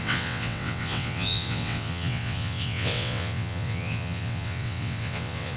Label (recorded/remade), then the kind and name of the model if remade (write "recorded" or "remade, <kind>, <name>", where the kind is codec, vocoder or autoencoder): remade, vocoder, WaveNeXt